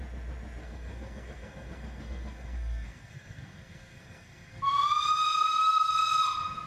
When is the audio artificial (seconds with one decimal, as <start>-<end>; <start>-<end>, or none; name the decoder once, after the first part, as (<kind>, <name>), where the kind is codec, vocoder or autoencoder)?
0.6-4.6 (codec, SNAC); 5.3-5.9